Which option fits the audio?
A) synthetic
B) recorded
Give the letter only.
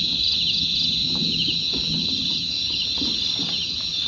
B